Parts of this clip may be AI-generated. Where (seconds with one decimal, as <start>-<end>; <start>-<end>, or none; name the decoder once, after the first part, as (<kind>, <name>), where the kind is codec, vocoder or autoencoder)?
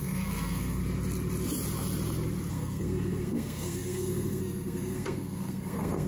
0.0-0.8 (codec, SNAC); 2.5-6.1